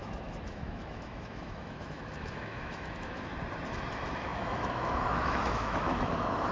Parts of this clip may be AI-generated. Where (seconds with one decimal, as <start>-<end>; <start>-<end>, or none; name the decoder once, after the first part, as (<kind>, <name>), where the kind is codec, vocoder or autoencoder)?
0.0-3.3 (autoencoder, DAC-VAE); 3.9-6.5